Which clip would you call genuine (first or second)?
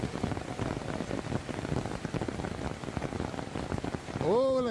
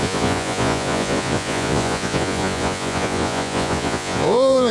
first